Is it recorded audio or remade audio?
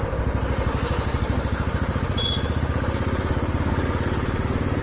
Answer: recorded